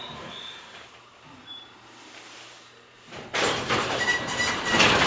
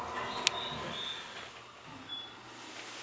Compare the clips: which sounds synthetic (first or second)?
first